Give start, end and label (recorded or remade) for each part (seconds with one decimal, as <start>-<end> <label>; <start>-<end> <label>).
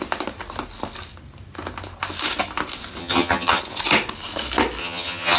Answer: 0.0-3.0 recorded; 3.0-3.6 remade; 3.6-4.8 recorded; 4.8-5.4 remade